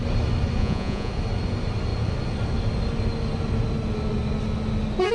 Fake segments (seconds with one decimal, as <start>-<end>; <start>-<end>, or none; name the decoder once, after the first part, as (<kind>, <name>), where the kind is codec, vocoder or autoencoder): 0.6-1.1 (vocoder, Vocos)